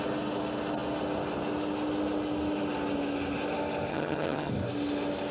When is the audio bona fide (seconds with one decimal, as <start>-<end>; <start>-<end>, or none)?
0.0-3.9; 4.5-5.3